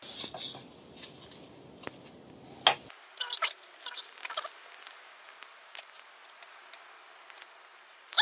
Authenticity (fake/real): real